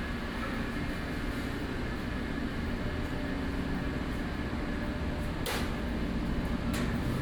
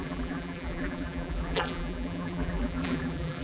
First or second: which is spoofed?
second